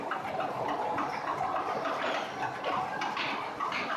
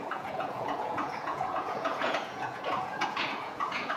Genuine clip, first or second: first